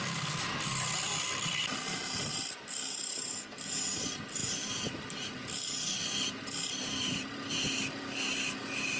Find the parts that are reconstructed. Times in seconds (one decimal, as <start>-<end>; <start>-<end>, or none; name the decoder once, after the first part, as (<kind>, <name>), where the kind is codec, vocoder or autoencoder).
1.1-3.8 (vocoder, BigVGAN v2); 4.4-8.6